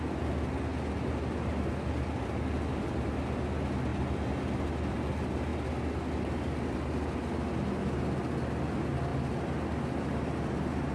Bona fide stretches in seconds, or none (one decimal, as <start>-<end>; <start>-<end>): 0.0-0.7; 3.1-5.5; 7.9-9.1

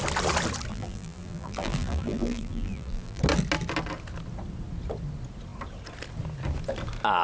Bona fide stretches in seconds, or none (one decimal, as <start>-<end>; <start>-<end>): 0.0-0.7; 3.2-7.2

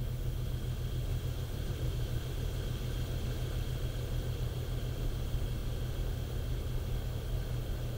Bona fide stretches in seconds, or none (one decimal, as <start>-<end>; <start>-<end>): 0.0-1.1; 2.3-8.0

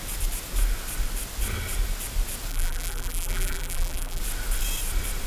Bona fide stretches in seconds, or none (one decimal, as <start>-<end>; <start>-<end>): 0.0-2.5; 4.2-5.3

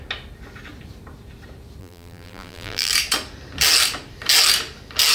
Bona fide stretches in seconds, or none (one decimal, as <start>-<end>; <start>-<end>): 0.0-1.8; 2.9-5.1

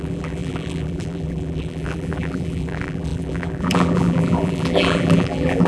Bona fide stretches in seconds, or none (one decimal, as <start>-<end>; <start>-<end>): none

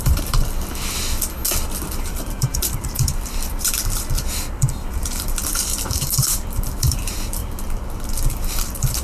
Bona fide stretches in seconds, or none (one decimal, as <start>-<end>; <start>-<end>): 0.4-2.0; 7.4-8.2

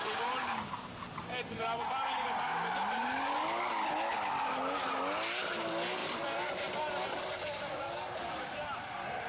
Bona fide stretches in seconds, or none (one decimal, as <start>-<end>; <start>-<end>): 0.0-6.0